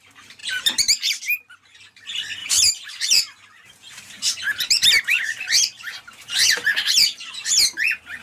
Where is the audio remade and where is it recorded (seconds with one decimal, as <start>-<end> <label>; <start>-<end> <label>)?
0.0-0.4 recorded; 0.4-1.2 remade; 1.2-2.4 recorded; 2.4-7.3 remade; 7.3-8.2 recorded